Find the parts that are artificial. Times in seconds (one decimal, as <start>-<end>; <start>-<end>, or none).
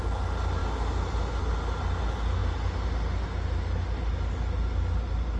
none